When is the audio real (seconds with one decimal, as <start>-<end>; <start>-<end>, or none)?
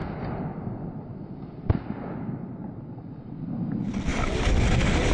0.0-5.1